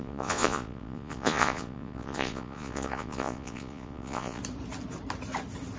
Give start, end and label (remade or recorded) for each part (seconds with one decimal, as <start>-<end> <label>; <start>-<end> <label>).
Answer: 0.0-4.4 remade; 4.4-5.8 recorded